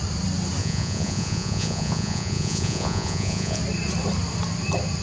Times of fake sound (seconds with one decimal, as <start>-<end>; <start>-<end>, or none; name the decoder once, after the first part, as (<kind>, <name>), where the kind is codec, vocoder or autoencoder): 0.6-3.6 (vocoder, Vocos)